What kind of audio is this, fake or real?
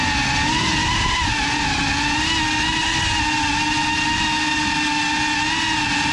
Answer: real